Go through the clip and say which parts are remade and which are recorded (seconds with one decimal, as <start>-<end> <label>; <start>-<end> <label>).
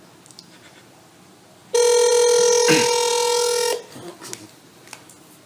0.0-5.5 recorded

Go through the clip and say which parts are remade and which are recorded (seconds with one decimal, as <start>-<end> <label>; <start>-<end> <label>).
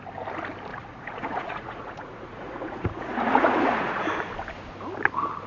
0.0-0.7 recorded; 0.7-4.0 remade; 4.0-5.5 recorded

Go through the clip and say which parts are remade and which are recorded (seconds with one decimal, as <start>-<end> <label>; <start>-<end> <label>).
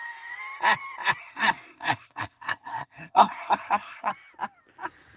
0.0-1.2 recorded; 1.2-4.1 remade; 4.1-5.2 recorded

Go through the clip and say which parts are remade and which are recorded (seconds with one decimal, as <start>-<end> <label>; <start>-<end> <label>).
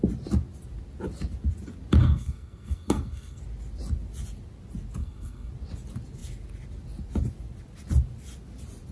0.0-2.0 recorded; 2.0-3.4 remade; 3.4-5.0 recorded; 5.0-5.5 remade; 5.5-8.9 recorded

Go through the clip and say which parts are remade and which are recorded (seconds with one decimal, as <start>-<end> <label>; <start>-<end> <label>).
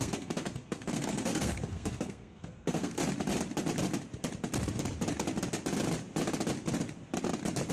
0.0-3.0 remade; 3.0-7.7 recorded